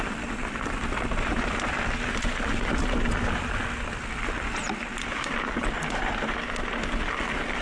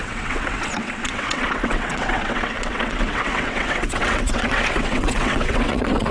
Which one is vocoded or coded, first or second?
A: second